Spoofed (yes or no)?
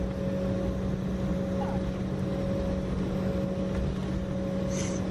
no